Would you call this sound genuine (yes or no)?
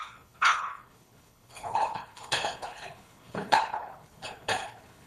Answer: no